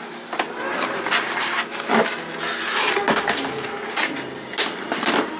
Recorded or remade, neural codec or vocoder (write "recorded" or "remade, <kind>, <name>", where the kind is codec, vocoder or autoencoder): recorded